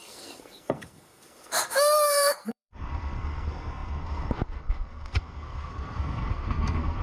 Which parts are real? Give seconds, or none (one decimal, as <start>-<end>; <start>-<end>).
none